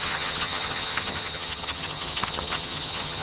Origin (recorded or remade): remade